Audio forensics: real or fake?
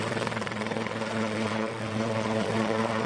fake